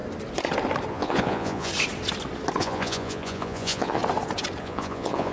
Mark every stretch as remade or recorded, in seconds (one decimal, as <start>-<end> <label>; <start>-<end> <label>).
0.0-0.9 recorded; 0.9-1.7 remade; 1.7-2.6 recorded; 2.6-4.0 remade; 4.0-4.6 recorded; 4.6-5.3 remade